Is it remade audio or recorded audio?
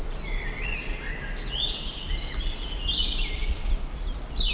recorded